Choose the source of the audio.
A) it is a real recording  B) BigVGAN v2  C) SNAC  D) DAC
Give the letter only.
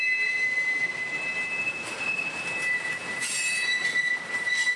A